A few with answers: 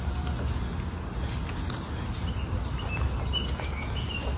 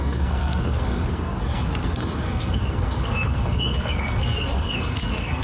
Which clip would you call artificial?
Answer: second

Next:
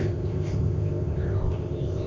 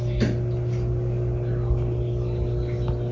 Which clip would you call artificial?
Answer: first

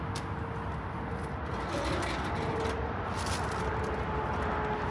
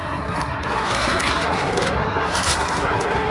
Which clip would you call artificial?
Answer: second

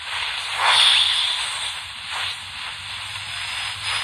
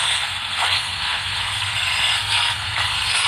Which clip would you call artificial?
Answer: second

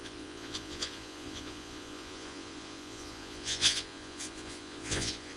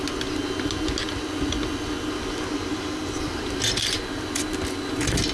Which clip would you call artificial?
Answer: first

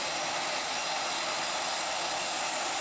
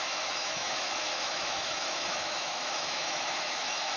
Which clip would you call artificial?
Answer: second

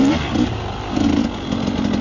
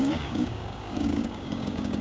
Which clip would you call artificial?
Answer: second